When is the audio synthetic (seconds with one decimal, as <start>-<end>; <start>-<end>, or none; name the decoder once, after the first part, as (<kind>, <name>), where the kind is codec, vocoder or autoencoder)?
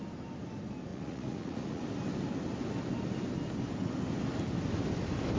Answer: 0.9-1.8 (vocoder, Vocos)